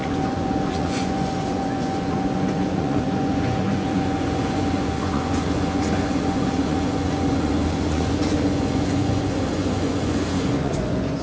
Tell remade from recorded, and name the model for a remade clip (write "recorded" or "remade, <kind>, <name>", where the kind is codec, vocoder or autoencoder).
remade, vocoder, Vocos